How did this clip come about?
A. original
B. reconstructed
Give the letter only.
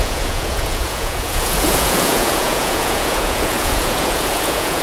B